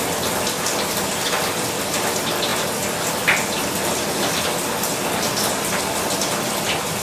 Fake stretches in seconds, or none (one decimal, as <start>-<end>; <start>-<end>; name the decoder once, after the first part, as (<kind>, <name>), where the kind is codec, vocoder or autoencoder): none